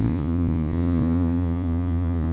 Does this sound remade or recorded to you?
remade